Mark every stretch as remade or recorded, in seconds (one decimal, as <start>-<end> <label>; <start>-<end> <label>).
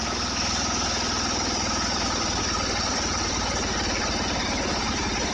0.0-2.4 recorded; 2.4-5.3 remade